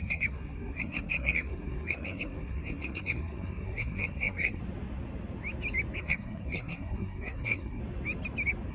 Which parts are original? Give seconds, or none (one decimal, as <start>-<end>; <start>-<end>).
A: 4.6-6.0; 7.8-8.7